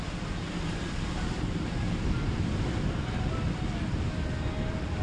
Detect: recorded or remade recorded